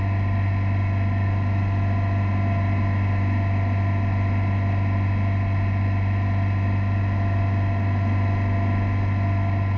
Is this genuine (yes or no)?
yes